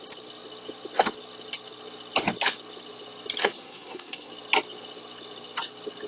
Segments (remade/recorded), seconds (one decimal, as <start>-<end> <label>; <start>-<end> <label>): 0.0-3.4 recorded; 3.4-4.3 remade; 4.3-6.1 recorded